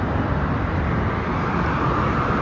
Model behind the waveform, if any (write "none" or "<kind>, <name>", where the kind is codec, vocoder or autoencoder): none